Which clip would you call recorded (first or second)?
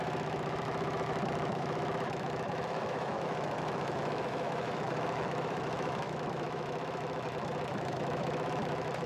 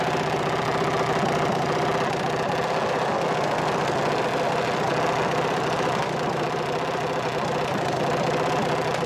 second